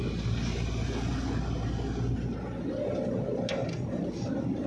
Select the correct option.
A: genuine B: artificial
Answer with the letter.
A